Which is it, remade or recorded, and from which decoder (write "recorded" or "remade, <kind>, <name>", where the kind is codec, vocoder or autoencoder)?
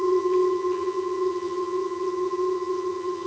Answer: remade, vocoder, HiFi-GAN